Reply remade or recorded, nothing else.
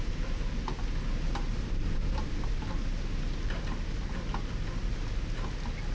recorded